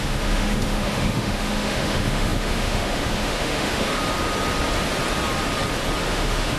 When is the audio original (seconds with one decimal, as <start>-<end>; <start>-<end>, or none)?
4.0-6.1